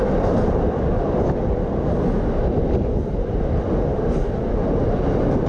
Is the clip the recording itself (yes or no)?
yes